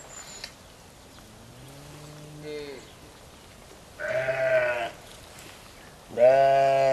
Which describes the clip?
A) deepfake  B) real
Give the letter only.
B